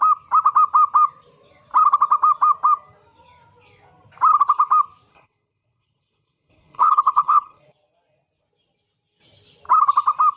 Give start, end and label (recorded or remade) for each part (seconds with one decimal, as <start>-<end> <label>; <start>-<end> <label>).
0.0-5.1 recorded; 5.1-7.6 remade; 7.6-10.4 recorded